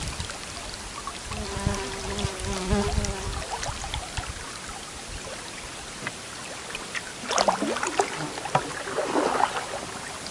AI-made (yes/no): no